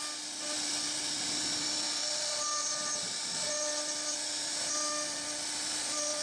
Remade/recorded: recorded